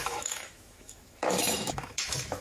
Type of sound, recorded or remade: remade